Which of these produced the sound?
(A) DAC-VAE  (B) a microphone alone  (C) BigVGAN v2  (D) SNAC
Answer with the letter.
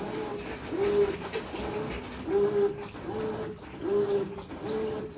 B